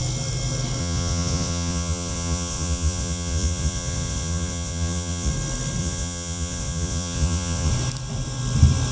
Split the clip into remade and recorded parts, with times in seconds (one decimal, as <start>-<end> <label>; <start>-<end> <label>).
0.0-0.8 recorded; 0.8-5.3 remade; 5.3-5.8 recorded; 5.8-7.7 remade; 7.7-8.9 recorded